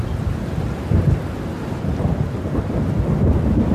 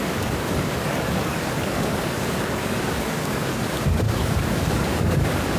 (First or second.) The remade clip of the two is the second